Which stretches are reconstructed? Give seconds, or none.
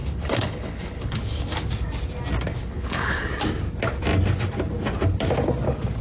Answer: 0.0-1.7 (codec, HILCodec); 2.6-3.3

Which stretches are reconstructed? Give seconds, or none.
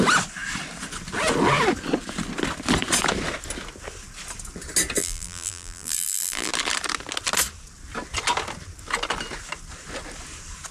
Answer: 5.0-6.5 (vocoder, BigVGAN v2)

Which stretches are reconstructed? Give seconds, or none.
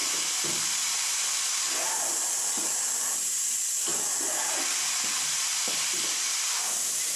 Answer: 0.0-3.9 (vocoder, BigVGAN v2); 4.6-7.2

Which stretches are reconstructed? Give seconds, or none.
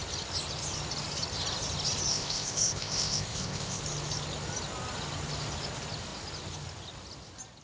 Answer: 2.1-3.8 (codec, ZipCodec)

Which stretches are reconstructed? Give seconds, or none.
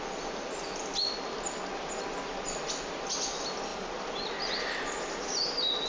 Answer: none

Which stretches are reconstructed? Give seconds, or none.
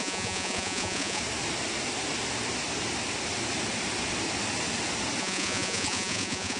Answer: 0.0-1.2 (vocoder, Vocos); 5.2-6.6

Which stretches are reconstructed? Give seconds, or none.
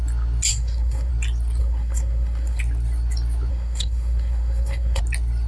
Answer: 0.5-1.1 (codec, SNAC); 1.6-2.6; 3.5-5.0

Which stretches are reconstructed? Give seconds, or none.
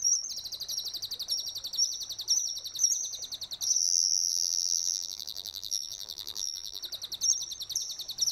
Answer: 3.8-6.8 (vocoder, BigVGAN v2)